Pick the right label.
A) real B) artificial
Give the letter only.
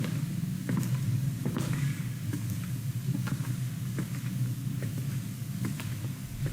B